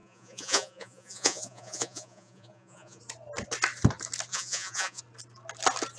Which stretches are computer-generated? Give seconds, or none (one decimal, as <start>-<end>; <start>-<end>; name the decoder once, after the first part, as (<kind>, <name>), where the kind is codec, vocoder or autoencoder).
0.0-3.0 (vocoder, Vocos); 4.3-5.0